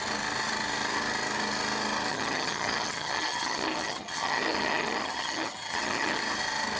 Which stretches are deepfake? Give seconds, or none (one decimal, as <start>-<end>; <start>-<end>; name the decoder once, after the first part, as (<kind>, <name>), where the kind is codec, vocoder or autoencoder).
2.1-6.2 (vocoder, HiFi-GAN)